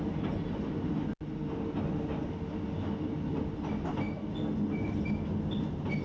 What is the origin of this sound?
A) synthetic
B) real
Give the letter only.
B